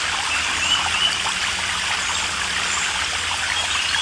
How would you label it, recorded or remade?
recorded